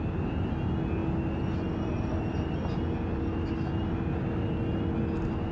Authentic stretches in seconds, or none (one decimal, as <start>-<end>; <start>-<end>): 0.0-5.5